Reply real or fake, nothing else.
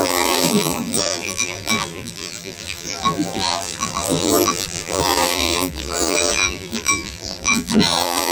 fake